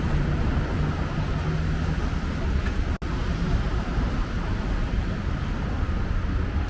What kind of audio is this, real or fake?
real